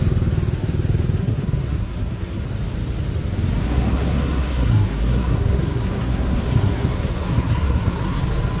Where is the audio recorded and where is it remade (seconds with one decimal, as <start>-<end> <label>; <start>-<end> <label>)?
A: 0.0-1.2 recorded; 1.2-2.4 remade; 2.4-3.6 recorded; 3.6-8.2 remade; 8.2-8.6 recorded

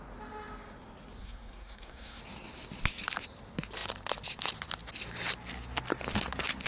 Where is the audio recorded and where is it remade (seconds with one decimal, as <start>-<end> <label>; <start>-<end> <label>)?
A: 0.0-1.2 recorded; 1.2-2.2 remade; 2.2-6.7 recorded